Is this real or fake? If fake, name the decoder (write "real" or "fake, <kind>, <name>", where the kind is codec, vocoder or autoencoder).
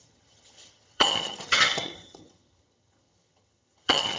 fake, vocoder, HiFi-GAN